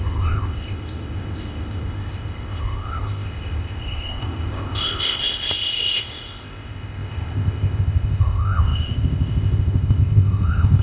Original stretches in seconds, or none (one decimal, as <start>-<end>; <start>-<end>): none